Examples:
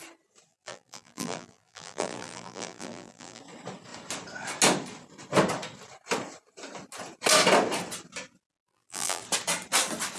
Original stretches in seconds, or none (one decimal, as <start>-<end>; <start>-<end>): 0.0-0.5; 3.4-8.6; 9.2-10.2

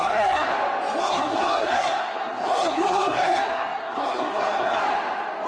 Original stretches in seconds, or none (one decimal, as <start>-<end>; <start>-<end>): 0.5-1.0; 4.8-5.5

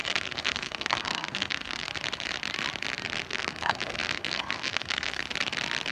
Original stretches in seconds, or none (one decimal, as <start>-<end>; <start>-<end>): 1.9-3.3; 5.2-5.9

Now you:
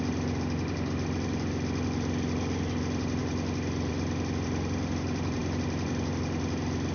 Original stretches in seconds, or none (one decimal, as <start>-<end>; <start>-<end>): 0.0-6.9